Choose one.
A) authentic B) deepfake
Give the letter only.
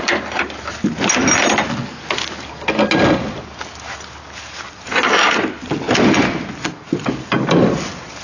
A